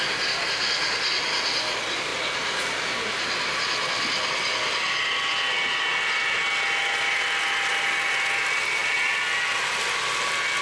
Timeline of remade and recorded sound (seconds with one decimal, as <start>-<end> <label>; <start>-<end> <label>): 0.0-10.6 recorded